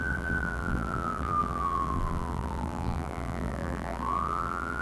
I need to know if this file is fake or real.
fake